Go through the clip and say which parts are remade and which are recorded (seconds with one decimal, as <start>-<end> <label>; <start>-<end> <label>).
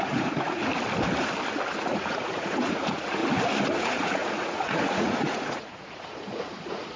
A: 0.0-0.7 remade; 0.7-1.7 recorded; 1.7-3.2 remade; 3.2-3.8 recorded; 3.8-7.0 remade